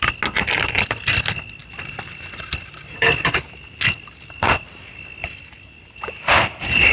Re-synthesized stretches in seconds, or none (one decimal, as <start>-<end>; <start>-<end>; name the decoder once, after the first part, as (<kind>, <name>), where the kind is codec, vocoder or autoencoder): none